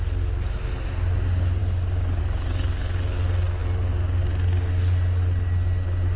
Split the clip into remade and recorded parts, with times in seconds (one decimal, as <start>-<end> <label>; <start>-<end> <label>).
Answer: 0.0-6.2 recorded